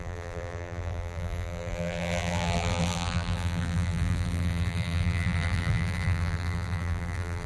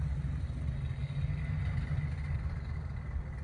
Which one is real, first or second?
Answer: second